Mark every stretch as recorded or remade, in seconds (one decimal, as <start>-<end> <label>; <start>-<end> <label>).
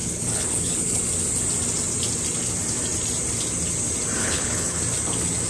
0.0-1.0 remade; 1.0-4.2 recorded; 4.2-4.8 remade; 4.8-5.5 recorded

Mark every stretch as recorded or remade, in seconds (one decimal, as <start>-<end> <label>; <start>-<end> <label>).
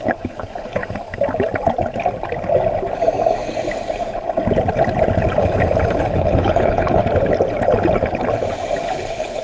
0.0-0.8 remade; 0.8-6.1 recorded; 6.1-7.0 remade; 7.0-8.8 recorded; 8.8-9.4 remade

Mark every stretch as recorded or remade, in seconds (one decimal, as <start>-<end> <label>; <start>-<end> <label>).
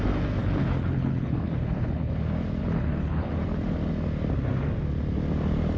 0.0-0.4 recorded; 0.4-2.1 remade; 2.1-2.6 recorded; 2.6-3.3 remade; 3.3-5.8 recorded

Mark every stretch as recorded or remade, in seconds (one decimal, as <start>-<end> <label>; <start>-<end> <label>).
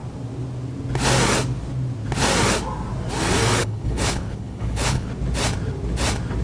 0.0-3.6 recorded; 3.6-5.1 remade; 5.1-6.4 recorded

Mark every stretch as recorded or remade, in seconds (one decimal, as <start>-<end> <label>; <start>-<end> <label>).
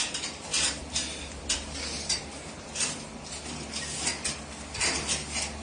0.0-5.6 recorded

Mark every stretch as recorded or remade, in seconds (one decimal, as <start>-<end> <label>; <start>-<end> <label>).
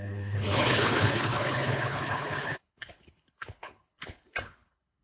0.0-5.0 remade